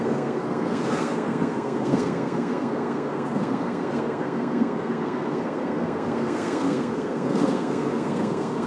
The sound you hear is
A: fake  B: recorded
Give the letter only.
A